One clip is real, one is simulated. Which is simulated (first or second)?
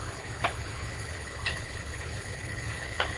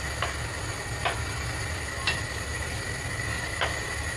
first